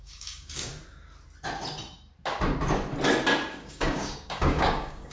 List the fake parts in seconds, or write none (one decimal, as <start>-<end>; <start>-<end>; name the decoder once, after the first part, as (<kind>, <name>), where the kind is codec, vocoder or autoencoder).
0.0-0.7 (codec, DAC); 3.5-5.1